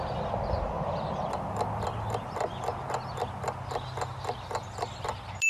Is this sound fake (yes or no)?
no